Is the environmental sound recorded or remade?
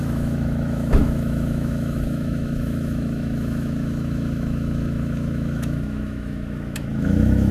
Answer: remade